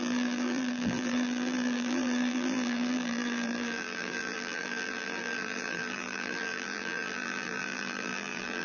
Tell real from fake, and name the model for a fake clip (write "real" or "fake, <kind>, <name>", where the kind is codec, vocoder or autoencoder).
fake, vocoder, BigVGAN v2